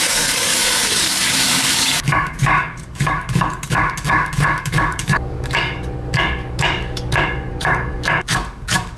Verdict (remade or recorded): remade